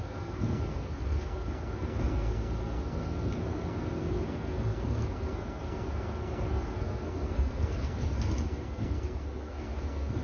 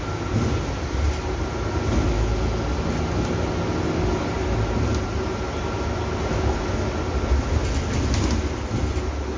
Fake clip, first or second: first